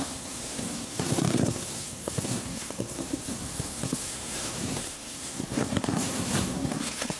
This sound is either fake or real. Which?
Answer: fake